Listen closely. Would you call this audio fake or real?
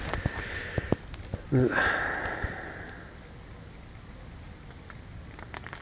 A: real